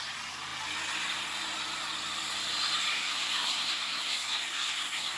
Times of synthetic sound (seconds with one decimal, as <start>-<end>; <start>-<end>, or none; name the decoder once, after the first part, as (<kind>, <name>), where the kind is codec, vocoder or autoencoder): 2.9-5.2 (codec, SNAC)